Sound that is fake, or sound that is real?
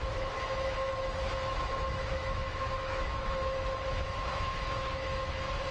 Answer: fake